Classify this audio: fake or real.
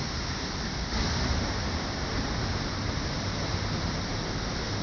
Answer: real